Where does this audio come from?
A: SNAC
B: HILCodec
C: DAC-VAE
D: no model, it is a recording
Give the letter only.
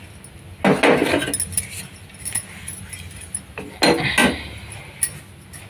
D